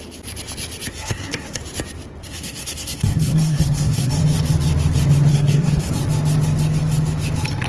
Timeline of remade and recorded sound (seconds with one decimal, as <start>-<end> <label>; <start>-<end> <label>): 0.0-0.9 recorded; 0.9-1.6 remade; 1.6-2.2 recorded; 2.2-4.1 remade; 4.1-5.3 recorded; 5.3-5.9 remade; 5.9-7.7 recorded